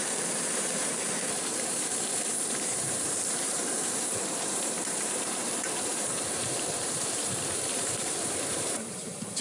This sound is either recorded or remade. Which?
remade